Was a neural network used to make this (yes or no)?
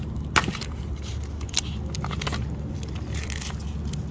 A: no